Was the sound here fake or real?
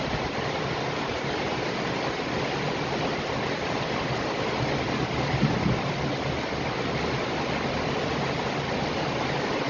real